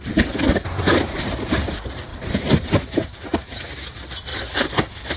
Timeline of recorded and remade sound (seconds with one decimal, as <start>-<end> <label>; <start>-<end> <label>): 0.0-5.2 recorded